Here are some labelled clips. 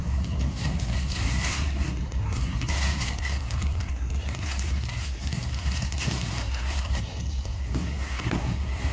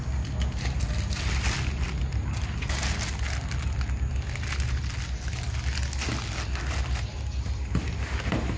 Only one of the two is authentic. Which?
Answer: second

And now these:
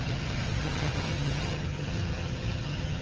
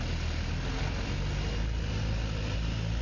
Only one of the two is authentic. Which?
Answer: second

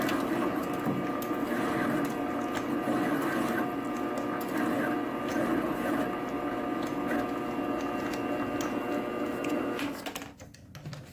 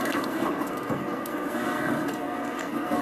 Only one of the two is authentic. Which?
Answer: first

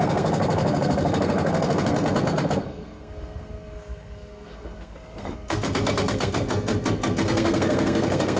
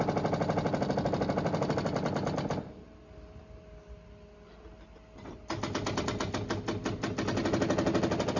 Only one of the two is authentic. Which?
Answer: second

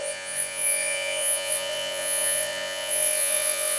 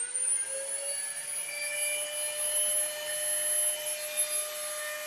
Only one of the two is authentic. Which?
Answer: second